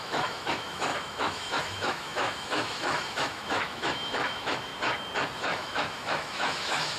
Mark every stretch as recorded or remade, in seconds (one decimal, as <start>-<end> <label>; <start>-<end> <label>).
0.0-4.7 remade; 4.7-5.4 recorded; 5.4-7.0 remade

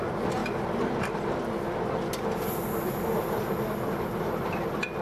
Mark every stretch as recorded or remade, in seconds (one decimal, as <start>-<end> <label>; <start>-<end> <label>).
0.0-5.0 recorded

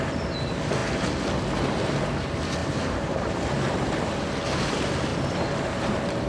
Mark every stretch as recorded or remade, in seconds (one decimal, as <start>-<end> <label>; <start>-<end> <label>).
0.0-2.6 recorded; 2.6-4.0 remade; 4.0-5.1 recorded; 5.1-6.3 remade

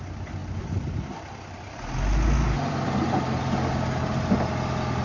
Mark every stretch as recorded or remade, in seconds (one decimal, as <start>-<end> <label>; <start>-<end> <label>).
0.0-0.4 recorded; 0.4-3.4 remade; 3.4-5.0 recorded

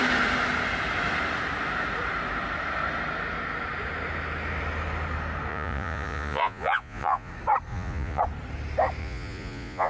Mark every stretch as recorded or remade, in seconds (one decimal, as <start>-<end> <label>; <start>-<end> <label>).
0.0-5.5 recorded; 5.5-7.3 remade; 7.3-7.7 recorded; 7.7-8.2 remade; 8.2-9.0 recorded; 9.0-9.9 remade